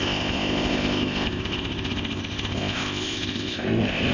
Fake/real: fake